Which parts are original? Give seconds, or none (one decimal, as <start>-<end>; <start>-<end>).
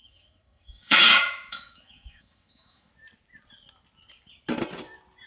2.9-5.3